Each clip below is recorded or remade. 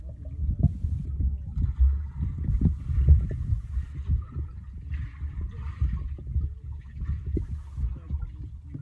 recorded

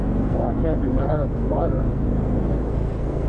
remade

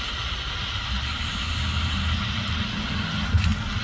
recorded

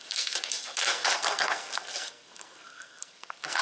remade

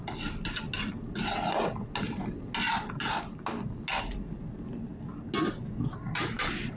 recorded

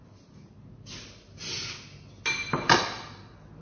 recorded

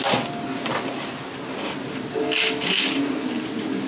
recorded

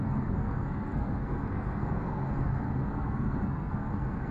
remade